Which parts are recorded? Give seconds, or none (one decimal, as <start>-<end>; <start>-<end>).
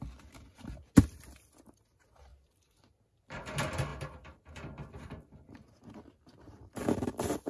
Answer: 0.0-7.5